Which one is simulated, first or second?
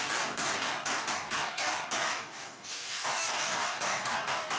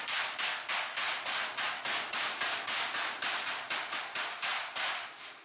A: first